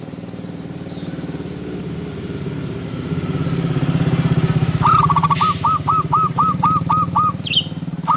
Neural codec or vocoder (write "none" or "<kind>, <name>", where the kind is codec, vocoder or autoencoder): vocoder, BigVGAN v2